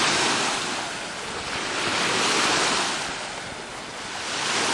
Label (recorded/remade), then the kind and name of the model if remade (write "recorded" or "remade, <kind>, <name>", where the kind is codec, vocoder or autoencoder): recorded